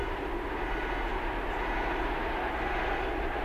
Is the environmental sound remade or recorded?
recorded